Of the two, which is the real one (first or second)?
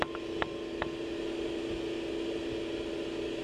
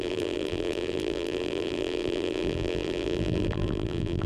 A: first